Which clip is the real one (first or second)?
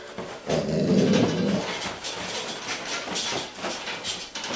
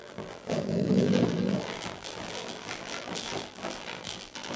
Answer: first